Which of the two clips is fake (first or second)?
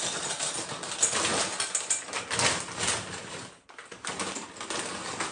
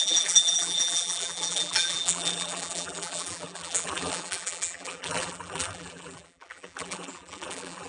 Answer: second